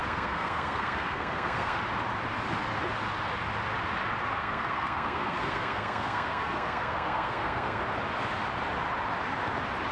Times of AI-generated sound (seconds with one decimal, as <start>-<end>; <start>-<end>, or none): 0.0-1.8; 4.4-7.8